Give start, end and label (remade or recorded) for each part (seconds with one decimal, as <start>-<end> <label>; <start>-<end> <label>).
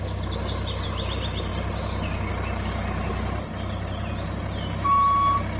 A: 0.0-5.6 recorded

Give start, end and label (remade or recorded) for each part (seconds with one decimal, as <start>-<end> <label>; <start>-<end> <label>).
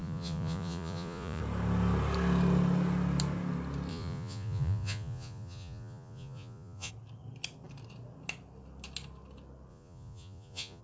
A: 0.0-1.4 remade; 1.4-3.9 recorded; 3.9-6.9 remade; 6.9-9.7 recorded; 9.7-10.8 remade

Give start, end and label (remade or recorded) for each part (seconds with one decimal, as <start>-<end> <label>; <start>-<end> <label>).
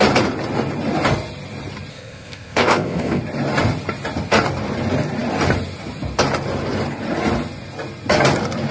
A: 0.0-1.9 recorded; 1.9-3.2 remade; 3.2-8.7 recorded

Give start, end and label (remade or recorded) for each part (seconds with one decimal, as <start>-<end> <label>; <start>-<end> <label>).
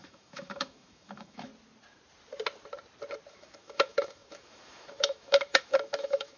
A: 0.0-1.5 remade; 1.5-3.3 recorded; 3.3-6.4 remade